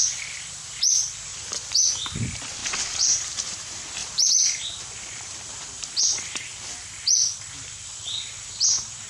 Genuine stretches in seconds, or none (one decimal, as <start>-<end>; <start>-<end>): 0.0-1.3; 1.9-2.6; 3.5-4.0; 5.8-9.1

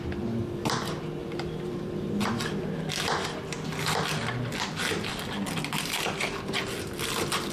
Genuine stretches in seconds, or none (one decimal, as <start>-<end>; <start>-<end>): 0.0-1.2; 2.2-7.5

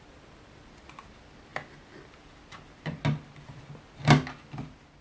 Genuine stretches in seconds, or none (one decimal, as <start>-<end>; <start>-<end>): 0.0-5.0